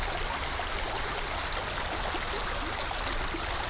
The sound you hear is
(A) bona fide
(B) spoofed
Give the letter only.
A